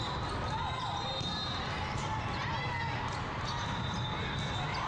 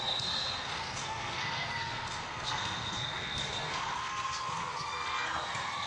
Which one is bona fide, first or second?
first